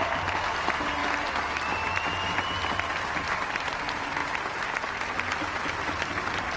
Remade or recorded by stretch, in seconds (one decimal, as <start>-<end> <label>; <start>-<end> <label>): 0.0-6.6 recorded